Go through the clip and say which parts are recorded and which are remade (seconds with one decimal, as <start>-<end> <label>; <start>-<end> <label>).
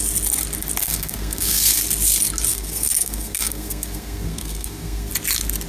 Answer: 0.0-0.8 recorded; 0.8-1.8 remade; 1.8-2.5 recorded; 2.5-5.1 remade; 5.1-5.7 recorded